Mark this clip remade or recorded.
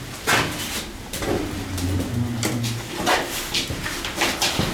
recorded